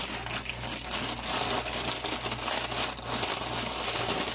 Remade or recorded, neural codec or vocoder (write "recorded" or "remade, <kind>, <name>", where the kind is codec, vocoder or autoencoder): recorded